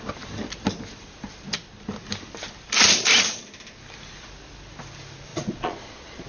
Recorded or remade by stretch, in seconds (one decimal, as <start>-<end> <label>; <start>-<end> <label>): 0.0-5.3 recorded; 5.3-6.3 remade